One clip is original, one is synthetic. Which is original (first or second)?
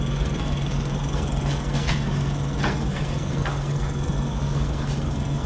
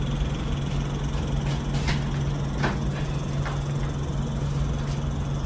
second